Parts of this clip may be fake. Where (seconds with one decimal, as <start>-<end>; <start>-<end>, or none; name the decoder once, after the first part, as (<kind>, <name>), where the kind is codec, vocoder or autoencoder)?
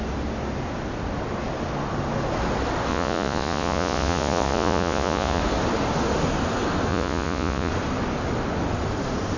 2.9-5.4 (vocoder, Vocos); 6.9-7.7